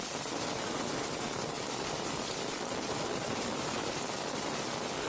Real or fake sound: fake